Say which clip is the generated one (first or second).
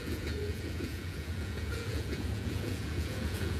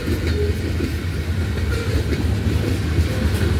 first